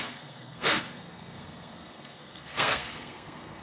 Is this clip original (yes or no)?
no